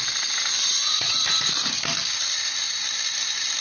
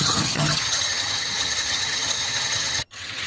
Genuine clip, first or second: first